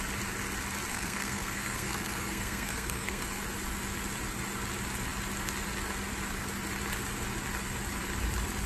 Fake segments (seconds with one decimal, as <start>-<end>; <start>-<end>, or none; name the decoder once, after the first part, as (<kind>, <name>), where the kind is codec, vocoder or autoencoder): 0.9-3.4 (codec, SNAC)